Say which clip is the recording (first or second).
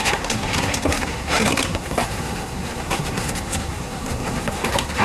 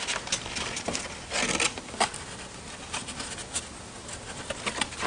second